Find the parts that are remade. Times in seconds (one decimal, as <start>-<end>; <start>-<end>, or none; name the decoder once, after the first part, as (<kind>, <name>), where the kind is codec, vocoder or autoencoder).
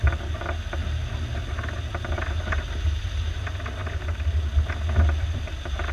none